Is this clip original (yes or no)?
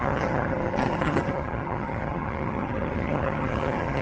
no